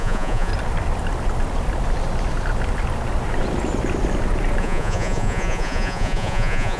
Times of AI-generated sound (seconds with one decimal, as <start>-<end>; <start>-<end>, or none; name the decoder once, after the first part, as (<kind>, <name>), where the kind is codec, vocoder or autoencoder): 0.0-0.5 (vocoder, Vocos); 4.6-6.8